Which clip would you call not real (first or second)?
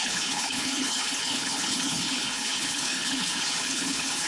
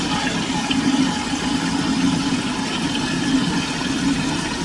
first